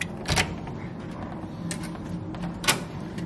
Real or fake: real